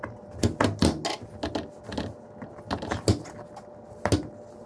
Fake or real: real